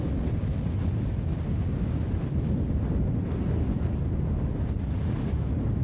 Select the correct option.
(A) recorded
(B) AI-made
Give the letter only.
A